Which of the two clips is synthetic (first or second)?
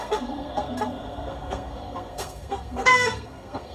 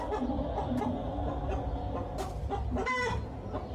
first